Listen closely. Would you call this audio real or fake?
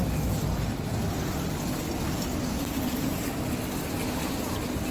real